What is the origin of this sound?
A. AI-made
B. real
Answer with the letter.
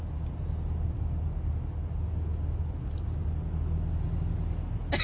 B